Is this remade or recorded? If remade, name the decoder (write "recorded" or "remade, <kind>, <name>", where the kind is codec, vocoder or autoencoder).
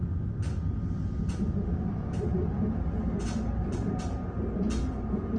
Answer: recorded